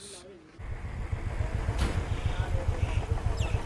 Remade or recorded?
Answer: recorded